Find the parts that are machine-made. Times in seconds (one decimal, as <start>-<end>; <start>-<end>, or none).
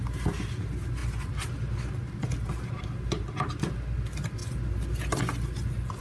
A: none